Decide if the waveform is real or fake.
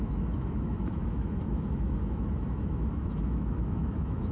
fake